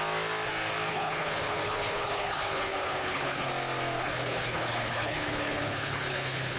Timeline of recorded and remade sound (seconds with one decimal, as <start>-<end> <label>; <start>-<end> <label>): 0.0-0.9 recorded; 0.9-3.5 remade; 3.5-4.0 recorded; 4.0-6.6 remade